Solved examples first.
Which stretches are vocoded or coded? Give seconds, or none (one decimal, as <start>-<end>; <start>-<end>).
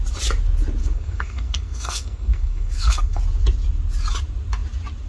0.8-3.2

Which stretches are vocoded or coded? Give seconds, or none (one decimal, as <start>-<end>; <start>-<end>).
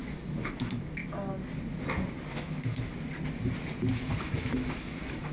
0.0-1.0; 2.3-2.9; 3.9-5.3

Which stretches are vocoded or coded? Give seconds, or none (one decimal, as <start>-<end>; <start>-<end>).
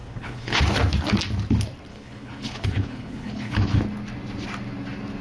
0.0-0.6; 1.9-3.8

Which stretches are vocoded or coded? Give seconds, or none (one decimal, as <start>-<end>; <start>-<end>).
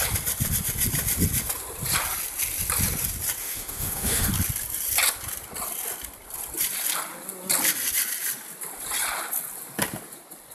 3.4-4.3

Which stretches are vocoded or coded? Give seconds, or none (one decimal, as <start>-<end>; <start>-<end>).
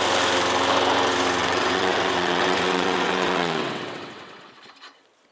1.4-4.6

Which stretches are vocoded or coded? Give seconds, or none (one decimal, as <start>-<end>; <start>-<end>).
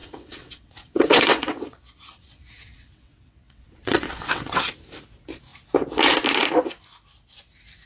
0.0-4.7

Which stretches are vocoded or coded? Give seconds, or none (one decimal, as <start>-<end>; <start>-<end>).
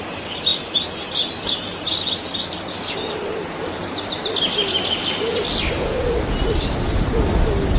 none